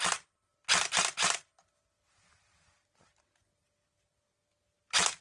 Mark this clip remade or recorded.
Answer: recorded